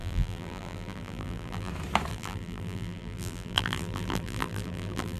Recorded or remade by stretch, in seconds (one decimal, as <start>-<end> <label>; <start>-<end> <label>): 0.0-1.7 remade; 1.7-2.1 recorded; 2.1-5.2 remade